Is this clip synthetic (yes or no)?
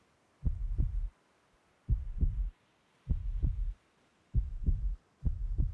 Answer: no